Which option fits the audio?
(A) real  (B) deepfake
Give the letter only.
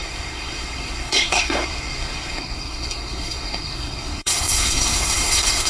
B